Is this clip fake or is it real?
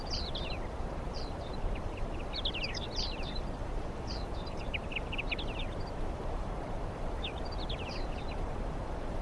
fake